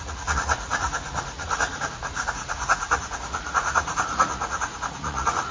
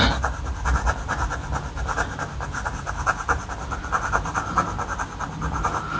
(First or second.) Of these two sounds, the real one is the second